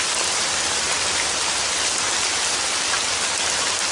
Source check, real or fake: real